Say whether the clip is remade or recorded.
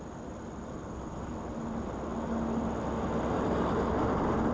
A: recorded